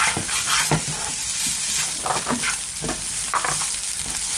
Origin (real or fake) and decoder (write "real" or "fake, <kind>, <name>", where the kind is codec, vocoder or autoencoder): real